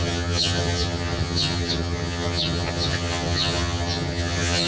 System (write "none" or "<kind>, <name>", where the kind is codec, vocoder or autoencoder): vocoder, HiFi-GAN